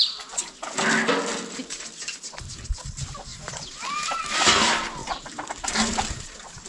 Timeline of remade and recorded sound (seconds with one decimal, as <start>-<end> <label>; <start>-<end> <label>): 0.0-3.3 recorded; 3.3-4.3 remade; 4.3-5.0 recorded; 5.0-6.7 remade